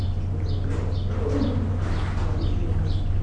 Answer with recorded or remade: recorded